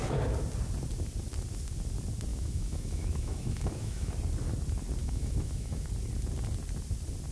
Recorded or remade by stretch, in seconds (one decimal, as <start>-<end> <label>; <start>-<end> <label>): 0.0-2.3 recorded; 2.3-4.1 remade; 4.1-5.0 recorded; 5.0-5.9 remade; 5.9-7.3 recorded